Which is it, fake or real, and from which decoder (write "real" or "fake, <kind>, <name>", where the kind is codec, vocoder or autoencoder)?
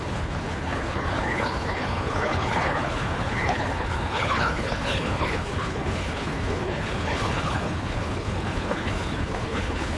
fake, codec, HILCodec